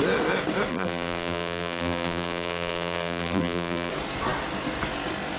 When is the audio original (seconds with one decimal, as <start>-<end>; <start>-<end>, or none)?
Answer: 0.0-0.7; 3.9-5.4